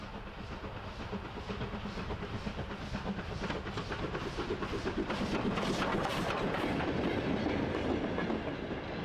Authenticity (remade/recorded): recorded